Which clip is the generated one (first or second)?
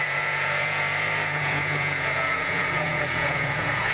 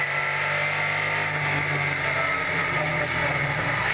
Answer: first